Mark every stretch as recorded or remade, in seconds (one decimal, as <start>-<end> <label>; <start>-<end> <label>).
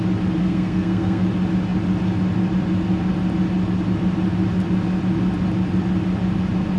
0.0-0.4 recorded; 0.4-1.2 remade; 1.2-6.8 recorded